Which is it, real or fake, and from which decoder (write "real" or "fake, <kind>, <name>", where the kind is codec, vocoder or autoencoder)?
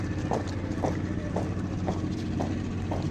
real